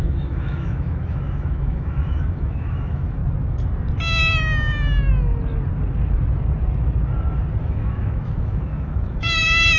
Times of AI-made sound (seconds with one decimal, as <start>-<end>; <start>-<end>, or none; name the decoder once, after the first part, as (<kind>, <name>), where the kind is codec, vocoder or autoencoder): 0.0-3.2 (autoencoder, DAC-VAE); 7.6-9.8